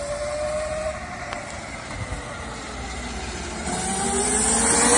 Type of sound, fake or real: real